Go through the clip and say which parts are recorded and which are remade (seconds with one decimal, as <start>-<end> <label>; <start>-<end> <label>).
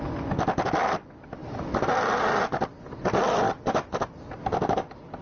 0.0-5.2 recorded